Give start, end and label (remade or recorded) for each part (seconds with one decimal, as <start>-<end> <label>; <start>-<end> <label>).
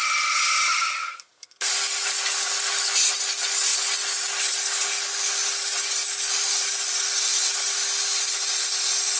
0.0-1.0 recorded; 1.0-1.7 remade; 1.7-9.2 recorded